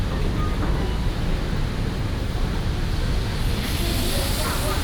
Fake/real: real